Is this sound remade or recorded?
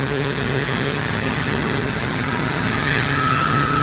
remade